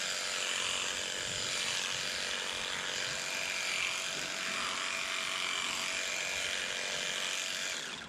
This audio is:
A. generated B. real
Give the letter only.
B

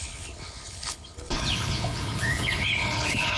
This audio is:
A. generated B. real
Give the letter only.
A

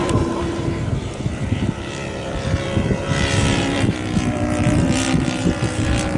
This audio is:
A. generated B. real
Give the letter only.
A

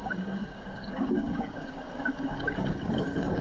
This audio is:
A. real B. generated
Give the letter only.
B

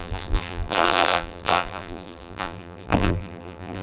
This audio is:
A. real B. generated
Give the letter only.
B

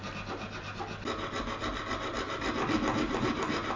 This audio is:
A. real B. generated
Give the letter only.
A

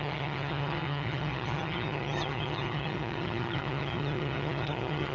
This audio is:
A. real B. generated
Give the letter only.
B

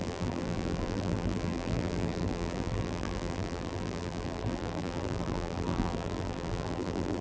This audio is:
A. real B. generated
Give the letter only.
B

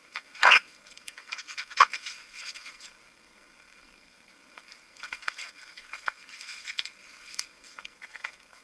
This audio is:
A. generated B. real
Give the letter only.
A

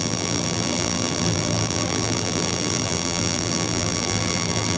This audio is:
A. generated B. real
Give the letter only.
A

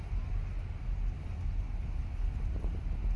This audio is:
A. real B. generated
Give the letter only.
A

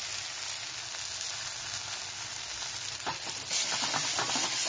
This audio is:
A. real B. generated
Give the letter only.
A